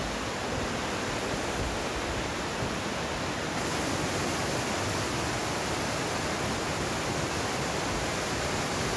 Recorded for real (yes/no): yes